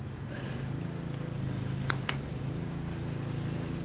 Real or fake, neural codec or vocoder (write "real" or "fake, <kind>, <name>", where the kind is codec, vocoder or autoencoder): real